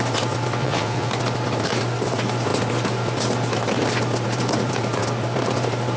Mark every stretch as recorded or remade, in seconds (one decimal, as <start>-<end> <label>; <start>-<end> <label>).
0.0-0.6 recorded; 0.6-1.1 remade; 1.1-6.0 recorded